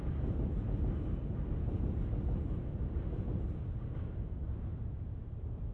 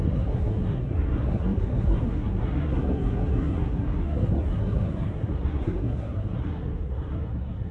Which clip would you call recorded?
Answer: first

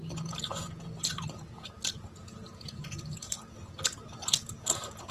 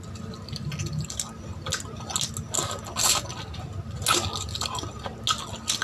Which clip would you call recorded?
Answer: second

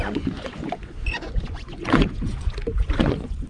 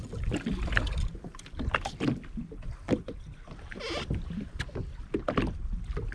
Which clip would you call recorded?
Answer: second